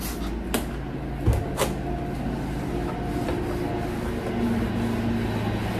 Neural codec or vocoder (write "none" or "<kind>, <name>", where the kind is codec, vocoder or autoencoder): none